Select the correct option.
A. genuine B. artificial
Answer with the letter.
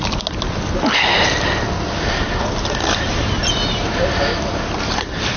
A